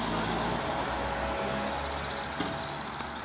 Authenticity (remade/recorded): recorded